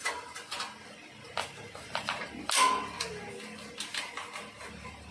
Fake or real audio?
real